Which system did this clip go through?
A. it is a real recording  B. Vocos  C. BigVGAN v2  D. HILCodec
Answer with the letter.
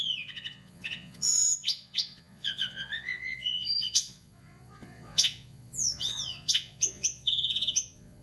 B